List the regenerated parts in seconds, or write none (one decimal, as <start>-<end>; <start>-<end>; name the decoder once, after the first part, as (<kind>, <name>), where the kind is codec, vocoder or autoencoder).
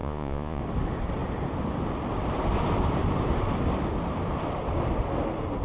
0.0-0.6 (vocoder, Vocos)